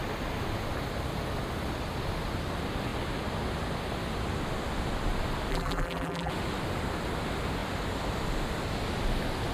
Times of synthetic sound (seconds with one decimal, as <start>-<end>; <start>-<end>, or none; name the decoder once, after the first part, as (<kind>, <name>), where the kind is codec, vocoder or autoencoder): 5.5-6.3 (vocoder, BigVGAN v2)